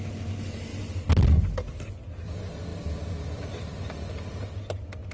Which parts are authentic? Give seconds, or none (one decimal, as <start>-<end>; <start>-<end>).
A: 0.0-5.1